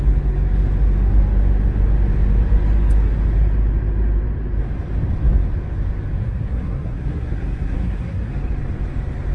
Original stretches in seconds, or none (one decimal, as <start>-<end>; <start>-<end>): 0.0-6.2; 8.3-9.3